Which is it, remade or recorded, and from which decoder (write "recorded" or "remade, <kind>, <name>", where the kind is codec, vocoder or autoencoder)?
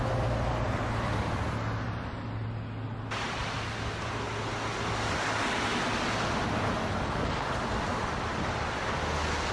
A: recorded